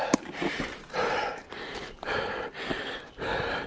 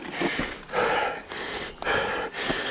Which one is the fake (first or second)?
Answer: first